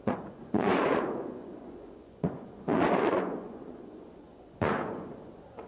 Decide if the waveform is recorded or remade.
remade